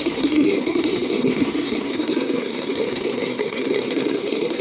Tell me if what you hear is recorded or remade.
remade